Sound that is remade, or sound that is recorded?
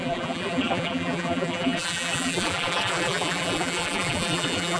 remade